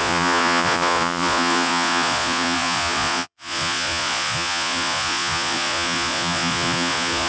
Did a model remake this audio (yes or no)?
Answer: yes